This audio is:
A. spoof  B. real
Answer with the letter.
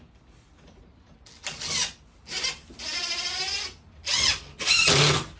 B